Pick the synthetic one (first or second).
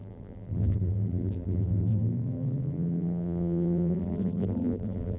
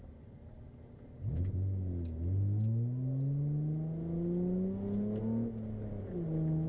first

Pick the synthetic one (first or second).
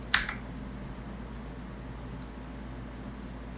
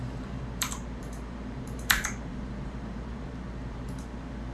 second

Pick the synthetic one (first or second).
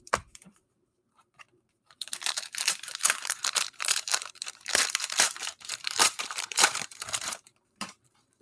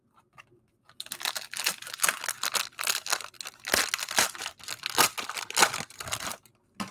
first